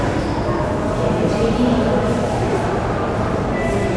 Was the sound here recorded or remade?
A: recorded